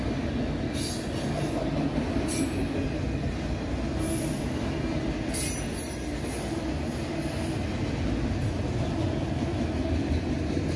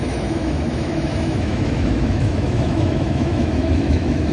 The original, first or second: first